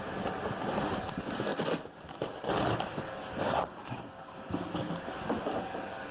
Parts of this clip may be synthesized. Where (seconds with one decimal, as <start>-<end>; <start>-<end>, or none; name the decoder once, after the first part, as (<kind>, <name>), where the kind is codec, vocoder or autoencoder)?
none